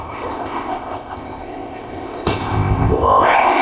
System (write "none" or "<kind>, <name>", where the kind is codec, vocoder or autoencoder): codec, ZipCodec